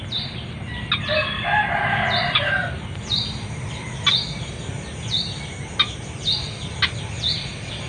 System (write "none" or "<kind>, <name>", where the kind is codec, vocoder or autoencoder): none